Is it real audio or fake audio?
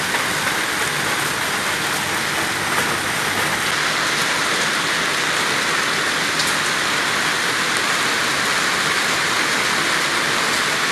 real